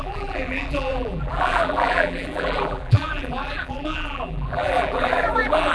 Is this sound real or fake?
fake